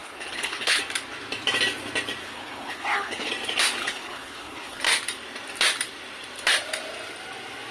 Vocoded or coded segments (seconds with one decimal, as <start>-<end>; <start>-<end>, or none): 0.0-0.8; 2.2-3.3; 3.8-4.8